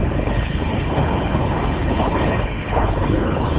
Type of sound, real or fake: fake